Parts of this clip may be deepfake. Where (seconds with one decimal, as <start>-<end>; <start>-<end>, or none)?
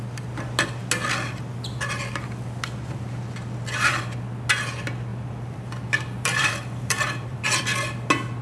5.1-7.6